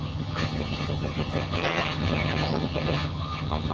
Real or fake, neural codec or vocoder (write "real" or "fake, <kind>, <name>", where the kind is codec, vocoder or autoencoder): fake, vocoder, HiFi-GAN